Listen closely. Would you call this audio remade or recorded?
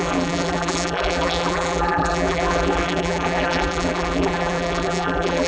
remade